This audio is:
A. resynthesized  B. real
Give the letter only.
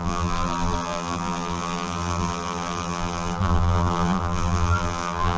A